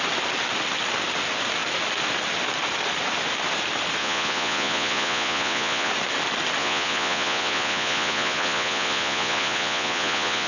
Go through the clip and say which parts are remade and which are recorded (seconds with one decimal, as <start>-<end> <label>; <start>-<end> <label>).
0.0-4.0 recorded; 4.0-5.9 remade; 5.9-6.6 recorded; 6.6-10.5 remade